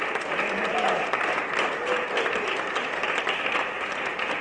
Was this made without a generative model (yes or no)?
yes